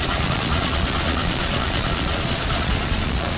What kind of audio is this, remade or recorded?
remade